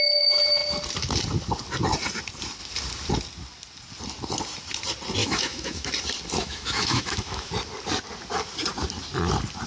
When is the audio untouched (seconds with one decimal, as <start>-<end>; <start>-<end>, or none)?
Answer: 0.0-5.2; 5.9-6.4; 7.5-9.7